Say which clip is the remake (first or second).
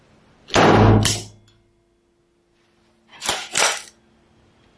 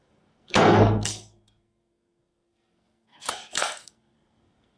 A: second